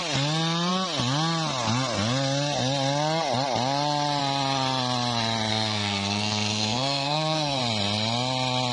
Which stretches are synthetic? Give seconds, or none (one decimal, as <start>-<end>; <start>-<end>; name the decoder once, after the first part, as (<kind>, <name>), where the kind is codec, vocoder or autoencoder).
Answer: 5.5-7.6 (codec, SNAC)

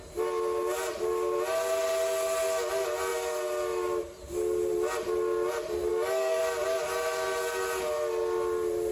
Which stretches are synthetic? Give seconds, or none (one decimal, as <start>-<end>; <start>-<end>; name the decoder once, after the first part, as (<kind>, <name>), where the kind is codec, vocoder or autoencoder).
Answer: 5.9-6.4 (codec, DAC)

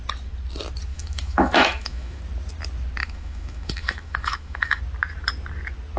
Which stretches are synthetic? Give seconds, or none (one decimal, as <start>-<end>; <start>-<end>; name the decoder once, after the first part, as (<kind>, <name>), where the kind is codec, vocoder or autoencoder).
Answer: 0.9-2.2 (autoencoder, DAC-VAE); 3.0-4.8

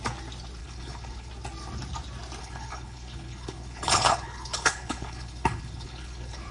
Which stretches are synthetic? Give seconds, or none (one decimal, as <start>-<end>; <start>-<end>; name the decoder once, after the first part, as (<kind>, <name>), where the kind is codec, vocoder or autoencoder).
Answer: 0.6-1.3 (codec, HILCodec); 2.4-6.5